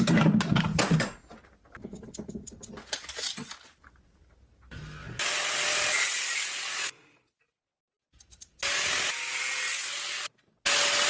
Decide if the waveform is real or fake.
real